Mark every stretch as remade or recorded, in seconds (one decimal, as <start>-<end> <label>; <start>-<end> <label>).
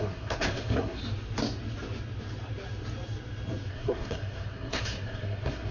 0.0-1.0 remade; 1.0-3.7 recorded; 3.7-5.7 remade